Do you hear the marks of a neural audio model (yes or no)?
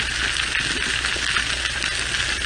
no